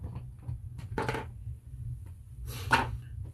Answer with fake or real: fake